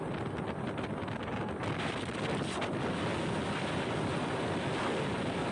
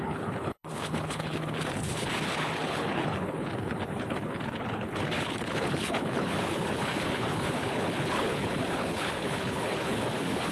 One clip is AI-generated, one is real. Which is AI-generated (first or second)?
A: second